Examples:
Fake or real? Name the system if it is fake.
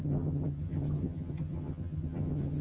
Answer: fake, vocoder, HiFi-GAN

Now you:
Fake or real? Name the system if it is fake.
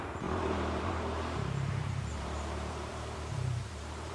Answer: fake, vocoder, BigVGAN v2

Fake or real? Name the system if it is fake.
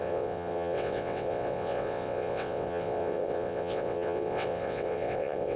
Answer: fake, vocoder, WaveNeXt